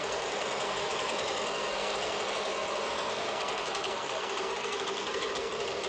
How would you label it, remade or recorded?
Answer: remade